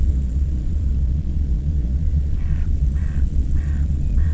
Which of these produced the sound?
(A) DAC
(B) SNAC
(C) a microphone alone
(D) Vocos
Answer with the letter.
D